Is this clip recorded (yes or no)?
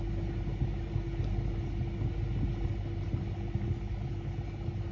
yes